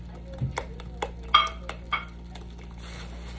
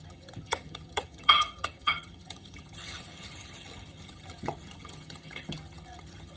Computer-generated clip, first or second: second